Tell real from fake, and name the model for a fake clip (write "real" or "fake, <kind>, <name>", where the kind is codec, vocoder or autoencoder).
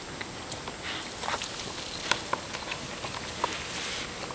real